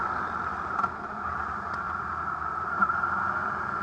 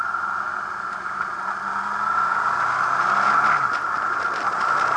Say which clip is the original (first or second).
second